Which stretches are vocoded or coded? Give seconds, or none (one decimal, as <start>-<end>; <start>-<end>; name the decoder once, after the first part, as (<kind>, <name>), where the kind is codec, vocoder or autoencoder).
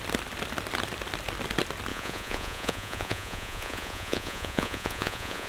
1.9-5.5 (vocoder, Vocos)